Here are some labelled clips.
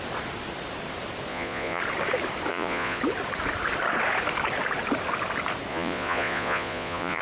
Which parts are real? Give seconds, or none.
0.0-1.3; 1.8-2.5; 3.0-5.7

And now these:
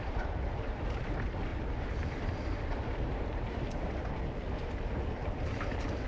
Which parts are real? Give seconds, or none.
4.0-5.2

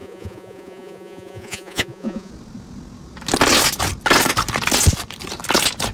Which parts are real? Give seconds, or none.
2.3-5.9

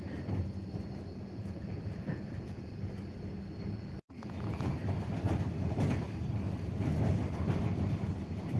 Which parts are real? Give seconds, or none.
0.0-1.1; 2.9-3.6; 4.7-8.6

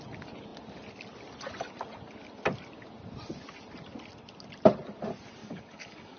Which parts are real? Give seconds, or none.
0.0-5.4

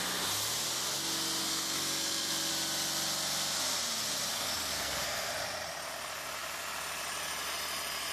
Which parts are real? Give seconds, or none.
0.0-1.4; 2.5-4.3; 5.3-8.1

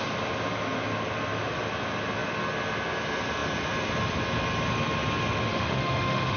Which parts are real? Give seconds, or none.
0.0-5.5

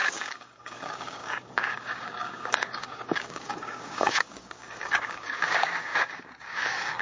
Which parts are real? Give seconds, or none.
none